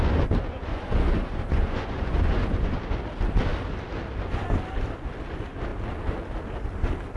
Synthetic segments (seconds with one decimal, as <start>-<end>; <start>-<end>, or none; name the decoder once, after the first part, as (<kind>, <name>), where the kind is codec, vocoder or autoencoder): 0.7-2.7 (vocoder, Vocos)